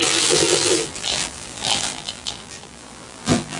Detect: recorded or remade remade